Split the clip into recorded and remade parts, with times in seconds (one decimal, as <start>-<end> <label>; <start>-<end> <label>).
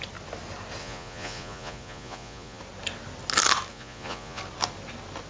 0.0-0.8 recorded; 0.8-2.6 remade; 2.6-3.7 recorded; 3.7-4.4 remade; 4.4-5.3 recorded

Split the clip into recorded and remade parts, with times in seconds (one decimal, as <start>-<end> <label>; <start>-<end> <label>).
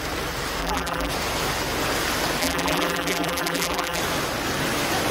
0.0-0.6 recorded; 0.6-1.1 remade; 1.1-2.4 recorded; 2.4-4.0 remade; 4.0-5.1 recorded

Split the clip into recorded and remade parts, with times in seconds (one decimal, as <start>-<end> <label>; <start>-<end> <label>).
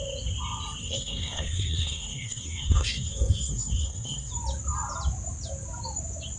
0.0-0.8 recorded; 0.8-4.3 remade; 4.3-6.4 recorded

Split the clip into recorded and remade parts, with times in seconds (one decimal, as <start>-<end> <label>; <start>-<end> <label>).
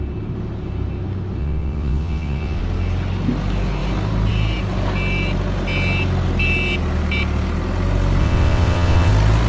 0.0-1.4 recorded; 1.4-2.6 remade; 2.6-8.2 recorded; 8.2-9.1 remade; 9.1-9.5 recorded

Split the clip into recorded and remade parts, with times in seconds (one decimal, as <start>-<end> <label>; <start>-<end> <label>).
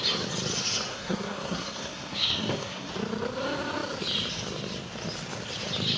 0.0-0.9 recorded; 0.9-2.9 remade; 2.9-6.0 recorded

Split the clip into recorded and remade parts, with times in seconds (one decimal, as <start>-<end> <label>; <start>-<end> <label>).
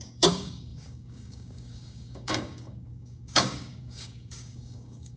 0.0-5.2 remade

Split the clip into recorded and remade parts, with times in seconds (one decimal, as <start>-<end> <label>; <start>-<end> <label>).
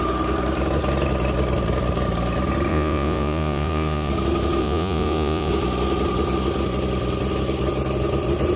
0.0-2.7 recorded; 2.7-4.1 remade; 4.1-4.6 recorded; 4.6-5.5 remade; 5.5-8.6 recorded